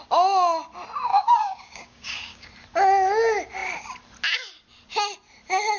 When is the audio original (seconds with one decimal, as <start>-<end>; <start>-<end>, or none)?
0.0-1.1; 2.5-5.8